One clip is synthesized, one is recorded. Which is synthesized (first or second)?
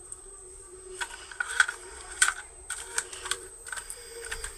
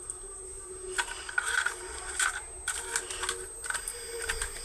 first